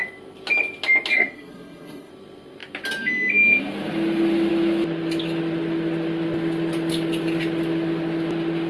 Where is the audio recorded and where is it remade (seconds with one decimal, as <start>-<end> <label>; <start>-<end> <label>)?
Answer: 0.0-1.1 recorded; 1.1-2.1 remade; 2.1-8.7 recorded